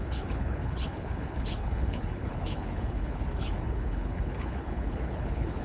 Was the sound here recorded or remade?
remade